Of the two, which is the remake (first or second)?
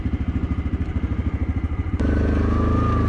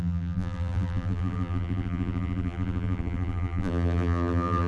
second